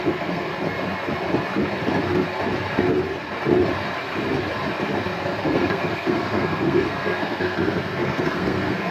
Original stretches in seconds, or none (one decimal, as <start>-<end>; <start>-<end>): 0.5-5.4